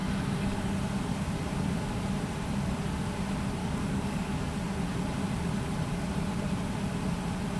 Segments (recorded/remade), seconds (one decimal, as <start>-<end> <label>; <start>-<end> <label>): 0.0-3.6 recorded; 3.6-4.5 remade; 4.5-7.6 recorded